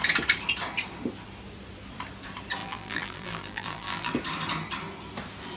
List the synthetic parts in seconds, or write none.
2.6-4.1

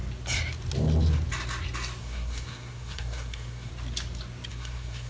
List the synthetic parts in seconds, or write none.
2.0-3.7; 4.5-5.1

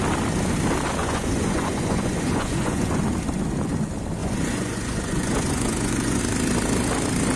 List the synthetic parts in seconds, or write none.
1.0-3.0; 4.2-6.2

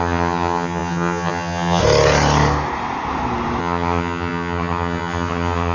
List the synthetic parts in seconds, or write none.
0.0-1.8; 3.6-5.7

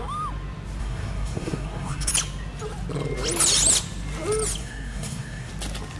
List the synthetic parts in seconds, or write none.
0.8-2.1; 4.6-5.5

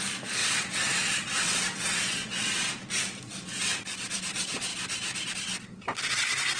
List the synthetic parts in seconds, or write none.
0.4-2.5

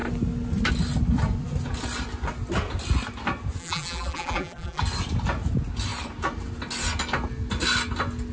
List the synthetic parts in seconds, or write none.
3.6-4.8